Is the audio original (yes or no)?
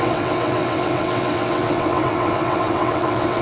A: no